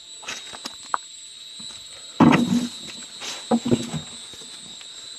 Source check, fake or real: real